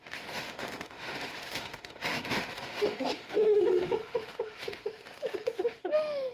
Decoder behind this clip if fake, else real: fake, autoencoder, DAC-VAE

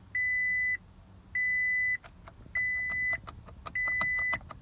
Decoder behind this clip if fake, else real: real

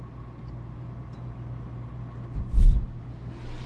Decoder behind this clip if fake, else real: real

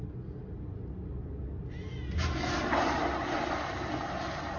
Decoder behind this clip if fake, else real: real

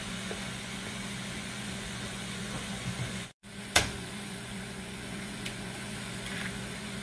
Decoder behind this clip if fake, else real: fake, vocoder, Vocos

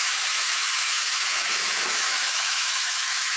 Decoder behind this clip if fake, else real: fake, autoencoder, DAC-VAE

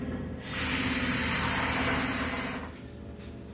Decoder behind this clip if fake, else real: fake, vocoder, BigVGAN v2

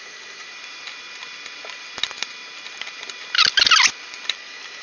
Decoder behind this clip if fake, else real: real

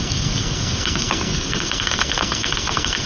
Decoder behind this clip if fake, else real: fake, codec, SNAC